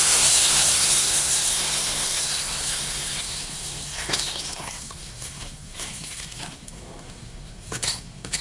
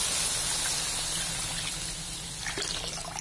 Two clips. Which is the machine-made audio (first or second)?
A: first